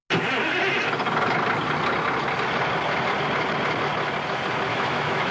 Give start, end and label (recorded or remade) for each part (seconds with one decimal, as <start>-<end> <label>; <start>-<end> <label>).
0.0-4.7 recorded; 4.7-5.3 remade